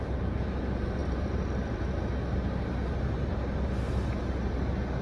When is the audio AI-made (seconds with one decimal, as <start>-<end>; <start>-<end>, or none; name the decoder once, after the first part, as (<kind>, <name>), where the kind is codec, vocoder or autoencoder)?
none